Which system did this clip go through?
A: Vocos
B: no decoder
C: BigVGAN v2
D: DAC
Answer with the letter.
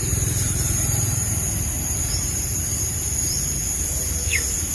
C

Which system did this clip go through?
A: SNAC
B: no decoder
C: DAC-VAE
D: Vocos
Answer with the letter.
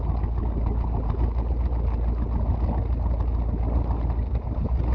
B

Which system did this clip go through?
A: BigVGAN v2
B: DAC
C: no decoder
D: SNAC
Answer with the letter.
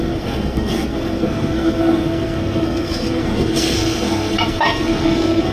D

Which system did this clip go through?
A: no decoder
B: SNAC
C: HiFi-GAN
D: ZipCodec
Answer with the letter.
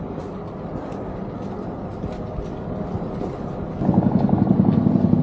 A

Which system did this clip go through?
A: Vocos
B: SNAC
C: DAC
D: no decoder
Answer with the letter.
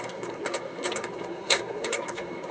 B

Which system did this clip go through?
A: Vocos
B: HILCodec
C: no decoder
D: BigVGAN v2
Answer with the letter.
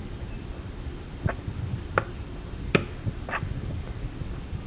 D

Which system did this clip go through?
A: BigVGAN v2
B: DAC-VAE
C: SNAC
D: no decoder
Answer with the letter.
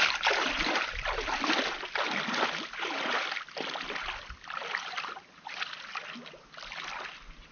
D